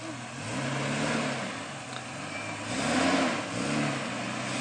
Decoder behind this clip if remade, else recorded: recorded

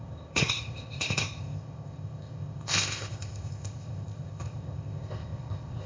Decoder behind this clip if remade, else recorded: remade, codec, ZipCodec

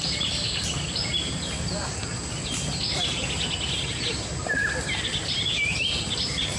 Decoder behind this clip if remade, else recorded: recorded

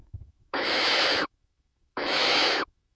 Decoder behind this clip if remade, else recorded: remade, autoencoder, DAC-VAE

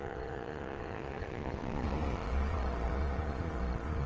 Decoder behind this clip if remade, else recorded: remade, vocoder, Vocos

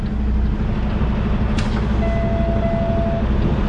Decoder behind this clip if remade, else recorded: recorded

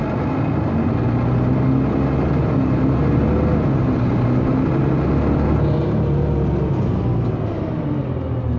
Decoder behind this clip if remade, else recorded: recorded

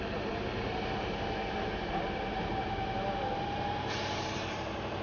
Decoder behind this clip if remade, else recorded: remade, vocoder, BigVGAN v2